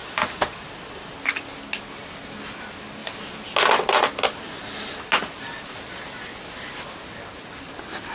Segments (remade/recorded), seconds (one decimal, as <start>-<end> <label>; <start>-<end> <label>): 0.0-8.1 recorded